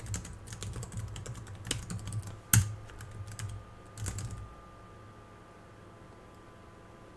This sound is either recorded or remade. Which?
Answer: recorded